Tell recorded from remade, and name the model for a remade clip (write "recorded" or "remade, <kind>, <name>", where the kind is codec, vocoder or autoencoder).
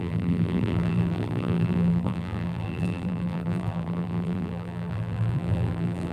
remade, vocoder, BigVGAN v2